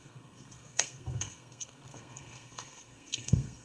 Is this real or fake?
fake